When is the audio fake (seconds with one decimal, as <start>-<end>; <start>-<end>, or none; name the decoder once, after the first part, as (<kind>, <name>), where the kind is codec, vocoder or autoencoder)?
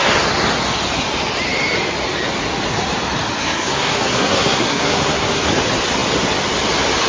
3.4-5.4 (codec, SNAC)